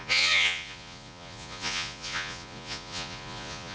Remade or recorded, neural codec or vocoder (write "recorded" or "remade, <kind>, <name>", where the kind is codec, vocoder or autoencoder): remade, vocoder, Vocos